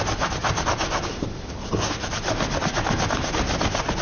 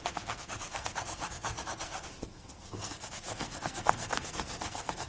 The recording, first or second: first